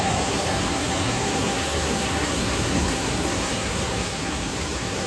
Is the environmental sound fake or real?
fake